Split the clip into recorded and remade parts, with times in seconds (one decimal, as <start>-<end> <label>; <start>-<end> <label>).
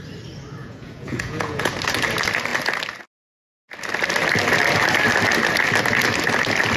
0.0-0.6 recorded; 0.6-1.7 remade; 1.7-6.8 recorded